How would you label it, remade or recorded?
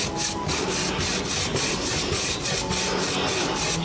recorded